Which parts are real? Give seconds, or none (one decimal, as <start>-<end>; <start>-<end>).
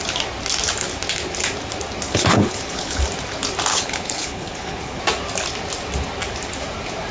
0.0-2.1; 3.0-3.7; 5.0-7.1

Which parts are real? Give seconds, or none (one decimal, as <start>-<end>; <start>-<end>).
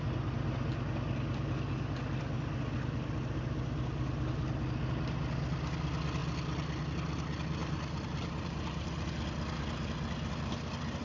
0.0-7.6; 9.2-11.0